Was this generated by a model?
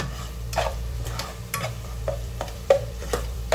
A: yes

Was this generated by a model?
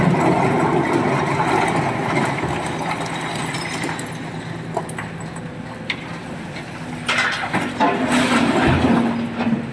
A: no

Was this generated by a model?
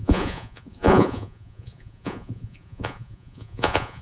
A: yes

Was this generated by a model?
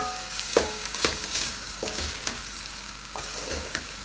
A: yes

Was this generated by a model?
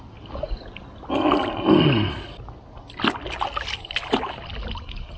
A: no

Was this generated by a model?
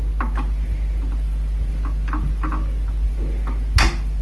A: no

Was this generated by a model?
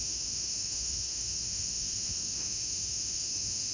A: yes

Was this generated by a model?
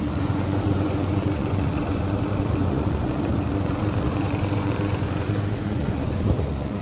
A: yes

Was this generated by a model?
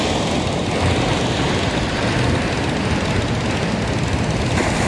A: no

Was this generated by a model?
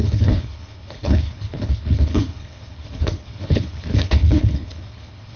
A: yes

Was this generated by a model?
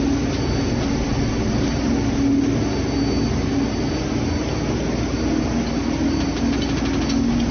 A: no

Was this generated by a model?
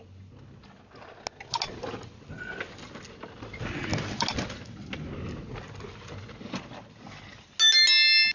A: no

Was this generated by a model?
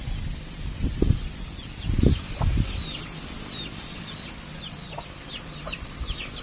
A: no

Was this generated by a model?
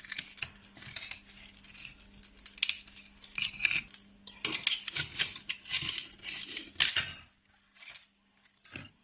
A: no